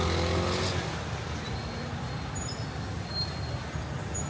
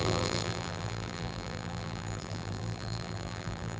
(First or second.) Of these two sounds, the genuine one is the first